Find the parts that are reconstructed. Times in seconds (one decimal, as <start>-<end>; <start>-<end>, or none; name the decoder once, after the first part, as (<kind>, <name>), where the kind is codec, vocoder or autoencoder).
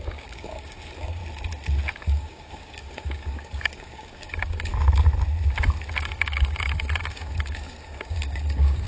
0.0-1.2 (codec, DAC); 1.9-4.7; 5.9-8.9